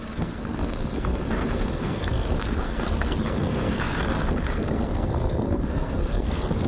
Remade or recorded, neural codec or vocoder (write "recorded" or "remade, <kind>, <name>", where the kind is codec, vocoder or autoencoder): remade, codec, SNAC